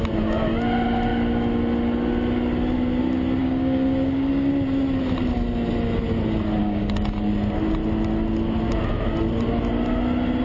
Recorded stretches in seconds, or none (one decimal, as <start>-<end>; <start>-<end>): 0.0-3.4; 4.5-6.6; 7.3-10.4

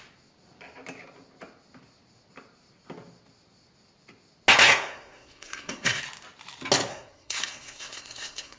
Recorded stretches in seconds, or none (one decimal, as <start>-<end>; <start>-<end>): 0.0-4.6; 6.0-6.9

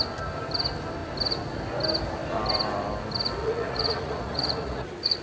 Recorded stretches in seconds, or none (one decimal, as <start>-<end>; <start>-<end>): 0.0-3.4

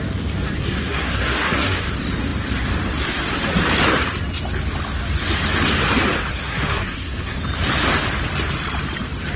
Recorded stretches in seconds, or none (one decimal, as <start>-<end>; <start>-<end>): 0.0-0.6; 1.9-6.3; 7.4-9.4

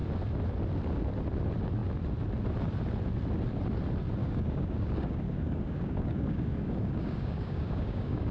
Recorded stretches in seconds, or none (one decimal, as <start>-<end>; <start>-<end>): 0.0-4.2

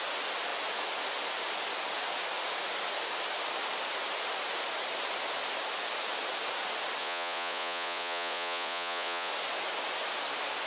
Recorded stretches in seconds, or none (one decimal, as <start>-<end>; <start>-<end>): 0.0-7.0; 9.3-10.7